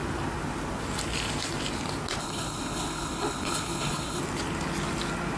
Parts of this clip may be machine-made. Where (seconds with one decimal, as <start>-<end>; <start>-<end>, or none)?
2.2-4.2